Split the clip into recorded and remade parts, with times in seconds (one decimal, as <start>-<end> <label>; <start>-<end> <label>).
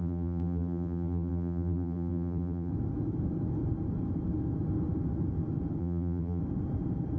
0.0-2.7 remade; 2.7-5.8 recorded; 5.8-6.4 remade; 6.4-7.2 recorded